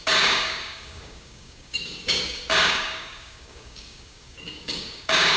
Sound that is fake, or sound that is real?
fake